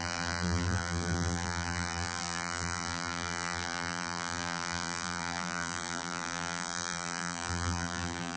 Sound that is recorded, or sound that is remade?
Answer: remade